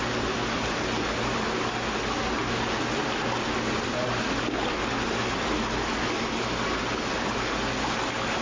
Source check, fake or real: real